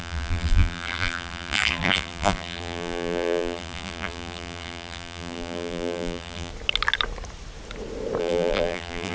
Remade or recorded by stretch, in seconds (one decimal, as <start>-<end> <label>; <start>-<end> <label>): 0.0-6.5 remade; 6.5-8.2 recorded; 8.2-9.1 remade